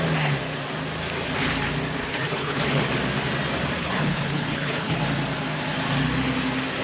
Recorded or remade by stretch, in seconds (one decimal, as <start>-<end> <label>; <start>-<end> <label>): 0.0-2.0 recorded; 2.0-2.8 remade; 2.8-3.8 recorded; 3.8-5.0 remade; 5.0-6.8 recorded